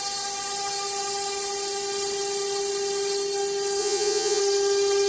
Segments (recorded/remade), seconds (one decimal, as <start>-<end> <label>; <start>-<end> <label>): 0.0-3.8 recorded; 3.8-4.4 remade; 4.4-5.1 recorded